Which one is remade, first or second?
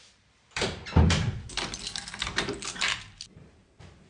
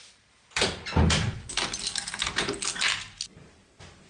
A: first